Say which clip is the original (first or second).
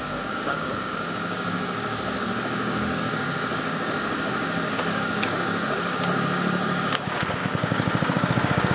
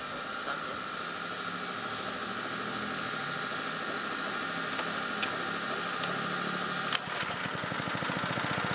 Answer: second